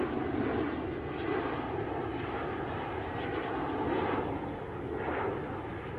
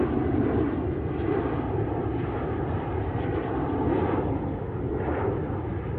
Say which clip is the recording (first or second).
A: first